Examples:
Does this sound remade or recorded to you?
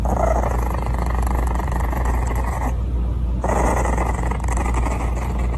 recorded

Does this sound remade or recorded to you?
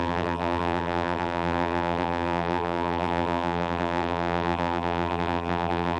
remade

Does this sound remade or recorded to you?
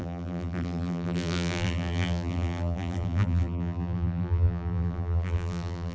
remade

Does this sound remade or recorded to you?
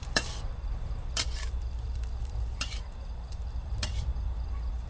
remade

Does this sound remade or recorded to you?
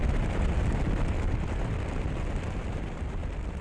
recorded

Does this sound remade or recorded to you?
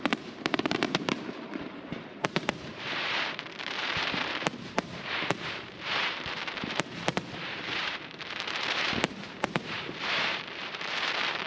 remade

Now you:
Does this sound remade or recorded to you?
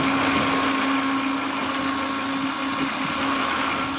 recorded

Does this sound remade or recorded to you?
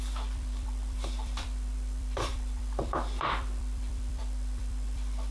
remade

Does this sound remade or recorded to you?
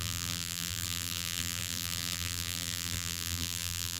remade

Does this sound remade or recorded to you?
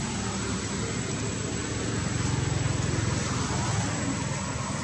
recorded